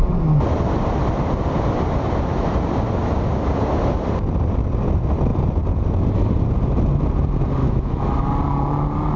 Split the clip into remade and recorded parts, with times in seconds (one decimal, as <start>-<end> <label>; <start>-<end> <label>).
0.0-7.6 recorded; 7.6-8.3 remade; 8.3-9.2 recorded